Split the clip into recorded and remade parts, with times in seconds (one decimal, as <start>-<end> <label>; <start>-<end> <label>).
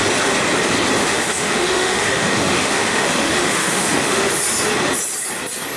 0.0-1.0 recorded; 1.0-4.3 remade; 4.3-5.8 recorded